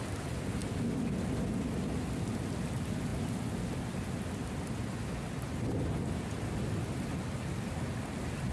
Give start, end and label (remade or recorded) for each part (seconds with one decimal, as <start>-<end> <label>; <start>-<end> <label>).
0.0-8.5 recorded